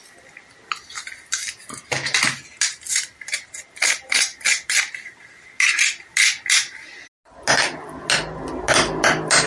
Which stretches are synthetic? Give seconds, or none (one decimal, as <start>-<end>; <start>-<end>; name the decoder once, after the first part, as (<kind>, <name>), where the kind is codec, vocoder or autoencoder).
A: none